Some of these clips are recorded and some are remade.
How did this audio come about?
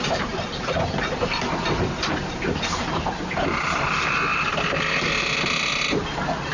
recorded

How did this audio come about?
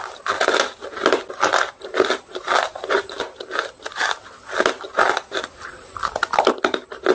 recorded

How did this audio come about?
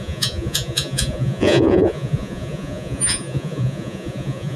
remade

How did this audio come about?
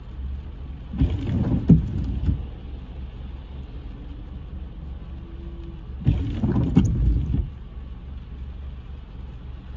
recorded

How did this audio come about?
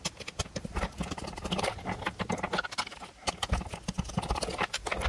recorded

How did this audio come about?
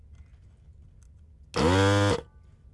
recorded